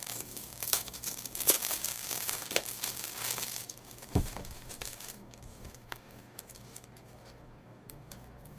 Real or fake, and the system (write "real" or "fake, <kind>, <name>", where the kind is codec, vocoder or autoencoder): fake, codec, DAC